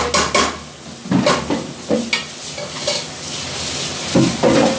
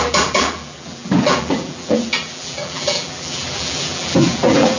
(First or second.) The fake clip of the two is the second